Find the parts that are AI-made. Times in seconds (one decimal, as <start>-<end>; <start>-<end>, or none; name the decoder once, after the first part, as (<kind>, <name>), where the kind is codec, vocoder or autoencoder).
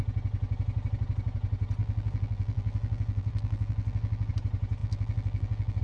1.8-4.3 (vocoder, BigVGAN v2); 4.8-5.8